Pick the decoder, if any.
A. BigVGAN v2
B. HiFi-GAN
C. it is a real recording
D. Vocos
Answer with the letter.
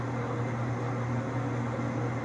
C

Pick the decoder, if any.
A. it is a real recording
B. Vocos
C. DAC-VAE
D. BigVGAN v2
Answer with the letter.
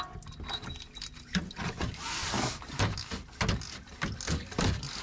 A